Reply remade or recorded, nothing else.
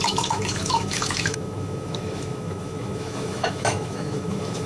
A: remade